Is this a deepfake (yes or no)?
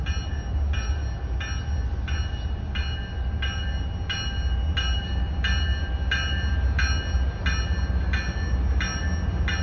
no